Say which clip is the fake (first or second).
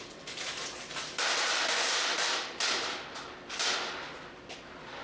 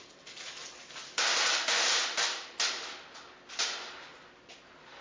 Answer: first